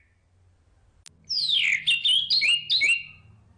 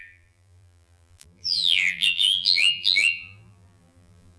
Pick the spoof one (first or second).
second